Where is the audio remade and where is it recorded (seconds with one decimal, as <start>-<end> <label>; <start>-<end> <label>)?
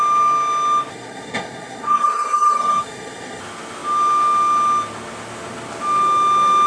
0.0-0.9 recorded; 0.9-3.4 remade; 3.4-6.7 recorded